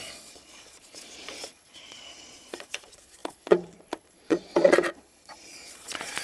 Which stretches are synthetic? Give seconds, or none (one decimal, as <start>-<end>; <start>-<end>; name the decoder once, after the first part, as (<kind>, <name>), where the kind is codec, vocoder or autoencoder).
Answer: 0.0-6.2 (vocoder, Vocos)